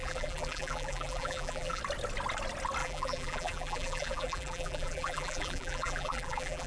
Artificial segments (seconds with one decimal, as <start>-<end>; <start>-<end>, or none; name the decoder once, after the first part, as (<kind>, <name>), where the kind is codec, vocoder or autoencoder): 0.0-1.8 (vocoder, BigVGAN v2); 2.8-6.7